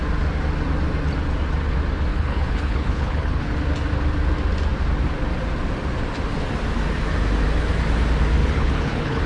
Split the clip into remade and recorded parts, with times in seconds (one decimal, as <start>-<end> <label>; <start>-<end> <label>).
0.0-2.1 recorded; 2.1-3.5 remade; 3.5-8.4 recorded; 8.4-9.3 remade